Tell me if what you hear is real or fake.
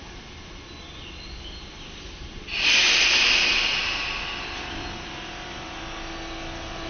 real